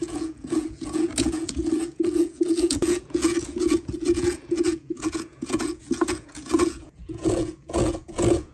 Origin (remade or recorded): remade